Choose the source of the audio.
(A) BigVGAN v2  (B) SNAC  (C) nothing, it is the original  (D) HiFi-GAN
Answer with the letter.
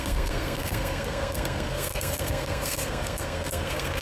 B